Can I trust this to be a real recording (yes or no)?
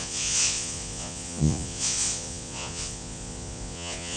no